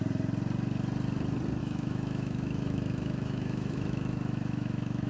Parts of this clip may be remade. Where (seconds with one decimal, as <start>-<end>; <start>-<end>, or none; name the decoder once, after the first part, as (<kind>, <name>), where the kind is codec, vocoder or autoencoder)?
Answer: 1.6-5.1 (autoencoder, DAC-VAE)